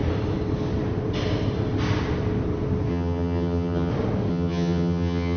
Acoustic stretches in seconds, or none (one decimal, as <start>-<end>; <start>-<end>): 0.0-2.9; 3.9-4.3